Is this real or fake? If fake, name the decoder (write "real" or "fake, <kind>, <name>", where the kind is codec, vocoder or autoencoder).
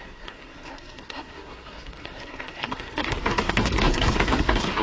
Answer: fake, codec, SNAC